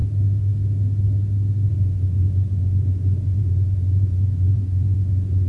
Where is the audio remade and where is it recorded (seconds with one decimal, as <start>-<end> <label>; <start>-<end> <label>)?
0.0-1.7 recorded; 1.7-5.5 remade